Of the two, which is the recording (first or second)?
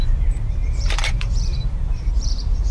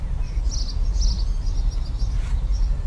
second